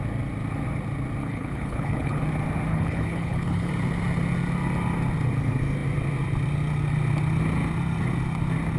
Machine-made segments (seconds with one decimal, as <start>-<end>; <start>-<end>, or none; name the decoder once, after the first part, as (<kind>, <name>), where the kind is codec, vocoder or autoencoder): 1.2-2.2 (codec, HILCodec); 2.7-3.7